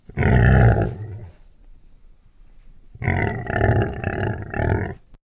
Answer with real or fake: real